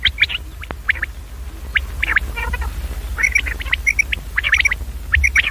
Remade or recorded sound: recorded